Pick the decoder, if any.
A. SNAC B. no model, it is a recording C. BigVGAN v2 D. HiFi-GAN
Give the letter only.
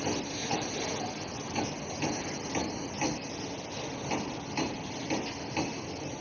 B